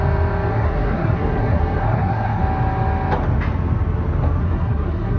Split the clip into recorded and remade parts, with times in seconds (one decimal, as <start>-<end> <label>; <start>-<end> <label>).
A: 0.0-0.5 recorded; 0.5-2.4 remade; 2.4-4.4 recorded; 4.4-5.2 remade